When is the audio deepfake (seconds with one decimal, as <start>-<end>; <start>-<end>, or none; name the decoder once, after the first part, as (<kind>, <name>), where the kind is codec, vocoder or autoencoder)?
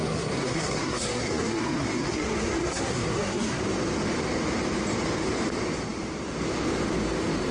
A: 0.0-3.6 (codec, SNAC)